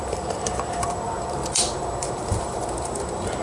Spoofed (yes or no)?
yes